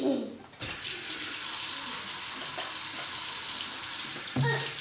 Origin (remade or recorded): recorded